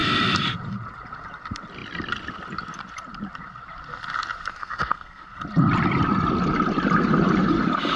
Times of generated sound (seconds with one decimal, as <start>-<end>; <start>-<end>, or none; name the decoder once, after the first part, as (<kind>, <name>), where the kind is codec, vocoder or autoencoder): 4.6-5.3 (codec, SNAC)